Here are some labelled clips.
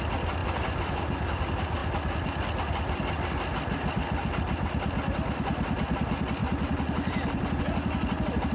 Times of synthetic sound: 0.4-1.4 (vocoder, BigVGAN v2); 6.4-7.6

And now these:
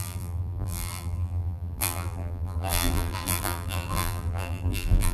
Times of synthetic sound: 0.0-5.1 (vocoder, BigVGAN v2)

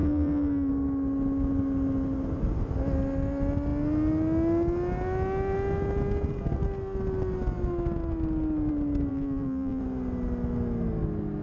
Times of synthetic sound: 0.0-0.7 (vocoder, BigVGAN v2); 9.1-9.8